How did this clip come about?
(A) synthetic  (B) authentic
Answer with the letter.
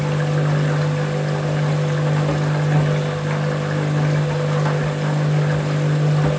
B